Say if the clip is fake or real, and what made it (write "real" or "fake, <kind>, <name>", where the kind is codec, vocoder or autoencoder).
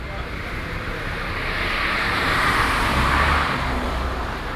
fake, vocoder, BigVGAN v2